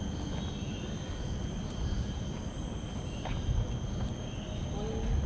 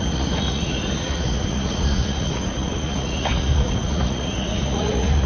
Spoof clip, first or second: second